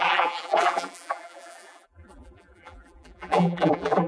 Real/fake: fake